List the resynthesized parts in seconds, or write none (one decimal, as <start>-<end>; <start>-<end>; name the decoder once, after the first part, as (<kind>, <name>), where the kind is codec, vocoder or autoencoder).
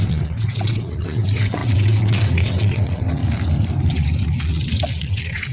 0.0-3.2 (vocoder, WaveNeXt); 3.9-5.5